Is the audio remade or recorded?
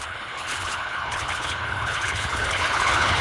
remade